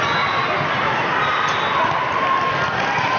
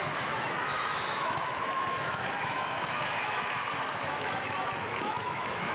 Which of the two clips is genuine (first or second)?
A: first